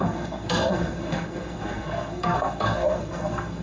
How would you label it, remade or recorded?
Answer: remade